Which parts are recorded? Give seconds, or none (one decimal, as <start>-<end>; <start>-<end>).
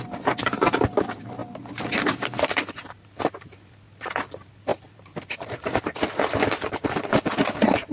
1.4-1.9